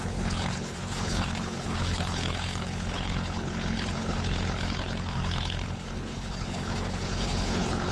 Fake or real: fake